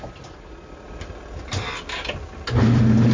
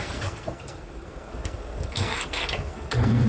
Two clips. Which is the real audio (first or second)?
first